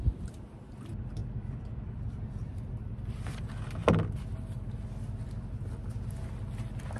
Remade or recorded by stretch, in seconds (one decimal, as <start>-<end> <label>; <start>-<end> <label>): 0.0-1.2 recorded; 1.2-2.7 remade; 2.7-7.0 recorded